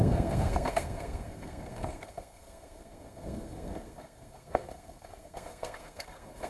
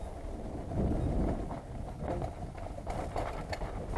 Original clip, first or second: second